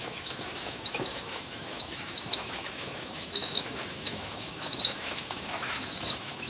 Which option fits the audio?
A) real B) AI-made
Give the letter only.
B